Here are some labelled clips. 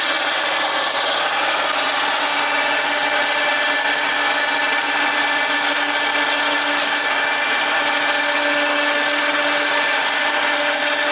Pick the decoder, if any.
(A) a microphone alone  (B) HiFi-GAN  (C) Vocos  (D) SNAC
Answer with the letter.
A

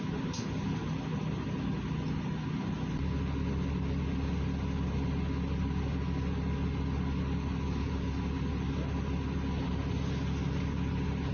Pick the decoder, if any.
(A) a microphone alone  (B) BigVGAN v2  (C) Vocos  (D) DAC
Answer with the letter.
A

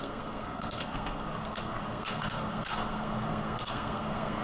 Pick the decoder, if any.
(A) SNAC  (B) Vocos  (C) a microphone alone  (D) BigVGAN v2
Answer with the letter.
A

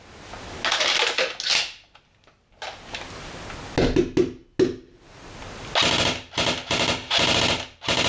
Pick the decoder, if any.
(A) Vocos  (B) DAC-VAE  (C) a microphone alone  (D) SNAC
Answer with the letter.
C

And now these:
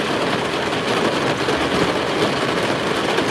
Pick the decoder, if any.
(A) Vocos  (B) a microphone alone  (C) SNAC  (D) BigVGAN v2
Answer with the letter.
B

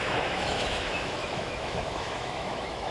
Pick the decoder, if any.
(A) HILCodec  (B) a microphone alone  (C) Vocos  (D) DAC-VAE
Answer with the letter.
D